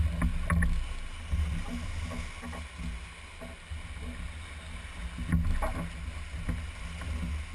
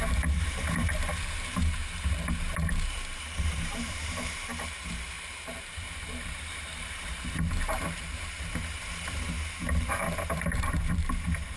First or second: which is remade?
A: second